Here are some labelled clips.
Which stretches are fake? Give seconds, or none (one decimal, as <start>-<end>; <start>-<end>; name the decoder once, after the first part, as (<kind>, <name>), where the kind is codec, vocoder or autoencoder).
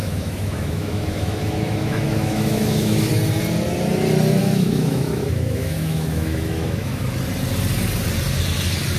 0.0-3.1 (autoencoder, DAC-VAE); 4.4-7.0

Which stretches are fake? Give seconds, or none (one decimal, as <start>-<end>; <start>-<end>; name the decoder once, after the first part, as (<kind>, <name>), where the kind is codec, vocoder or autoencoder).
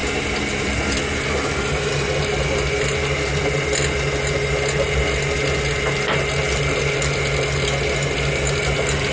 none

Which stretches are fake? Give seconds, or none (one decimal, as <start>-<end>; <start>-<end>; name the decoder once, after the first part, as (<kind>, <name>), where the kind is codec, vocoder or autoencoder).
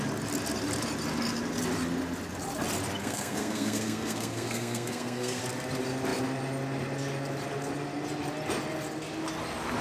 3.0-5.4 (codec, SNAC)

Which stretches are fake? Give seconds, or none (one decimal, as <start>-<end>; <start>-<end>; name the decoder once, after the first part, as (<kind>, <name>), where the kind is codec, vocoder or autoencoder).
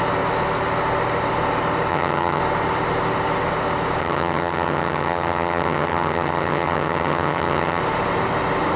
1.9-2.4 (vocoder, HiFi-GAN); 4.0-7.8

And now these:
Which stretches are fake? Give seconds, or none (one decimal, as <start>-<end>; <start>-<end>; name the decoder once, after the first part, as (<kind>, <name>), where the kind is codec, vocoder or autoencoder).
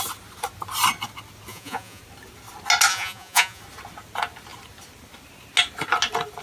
1.5-2.0 (vocoder, Vocos); 2.9-3.6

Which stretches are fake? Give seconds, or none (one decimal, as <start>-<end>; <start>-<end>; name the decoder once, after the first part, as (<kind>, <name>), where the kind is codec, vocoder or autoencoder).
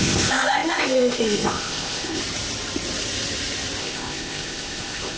0.0-2.2 (codec, ZipCodec); 3.8-5.2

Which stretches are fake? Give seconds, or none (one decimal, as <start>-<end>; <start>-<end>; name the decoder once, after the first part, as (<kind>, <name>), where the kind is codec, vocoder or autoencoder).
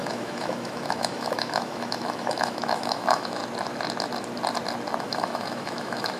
0.0-3.4 (autoencoder, DAC-VAE); 5.0-6.2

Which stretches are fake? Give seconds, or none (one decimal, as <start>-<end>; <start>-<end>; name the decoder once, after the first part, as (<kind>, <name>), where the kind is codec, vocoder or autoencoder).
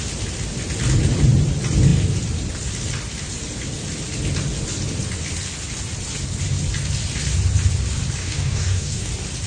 8.2-9.1 (codec, DAC)